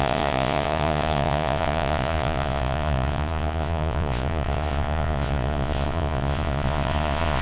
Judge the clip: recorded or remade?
remade